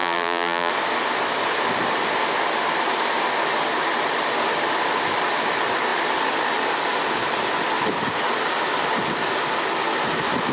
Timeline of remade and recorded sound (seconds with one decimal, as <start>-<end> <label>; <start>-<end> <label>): 0.0-0.7 remade; 0.7-10.5 recorded